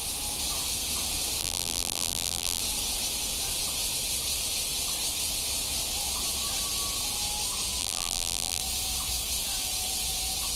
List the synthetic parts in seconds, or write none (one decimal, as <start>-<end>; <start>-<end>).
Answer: 1.4-2.6; 7.8-8.6